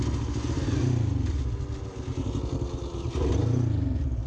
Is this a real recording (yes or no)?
yes